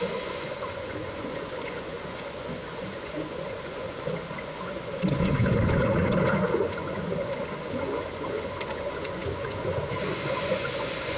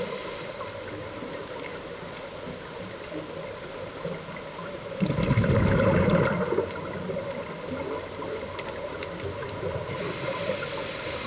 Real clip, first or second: second